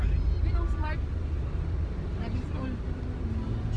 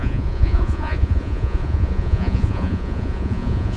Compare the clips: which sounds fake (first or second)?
second